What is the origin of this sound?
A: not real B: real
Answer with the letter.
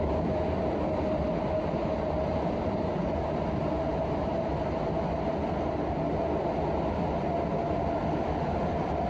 B